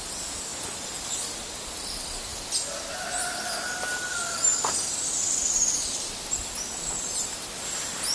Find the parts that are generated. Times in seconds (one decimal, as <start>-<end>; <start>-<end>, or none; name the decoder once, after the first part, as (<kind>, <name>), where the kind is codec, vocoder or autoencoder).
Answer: 0.5-1.1 (vocoder, BigVGAN v2)